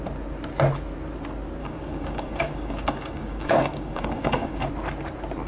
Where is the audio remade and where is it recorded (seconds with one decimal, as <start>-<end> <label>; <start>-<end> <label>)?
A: 0.0-1.6 recorded; 1.6-4.7 remade; 4.7-5.5 recorded